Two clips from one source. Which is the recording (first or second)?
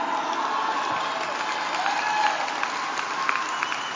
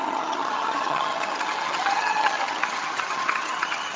first